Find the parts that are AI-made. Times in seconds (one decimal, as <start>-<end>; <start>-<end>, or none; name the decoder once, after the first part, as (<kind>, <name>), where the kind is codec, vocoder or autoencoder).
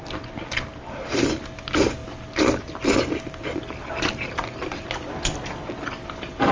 none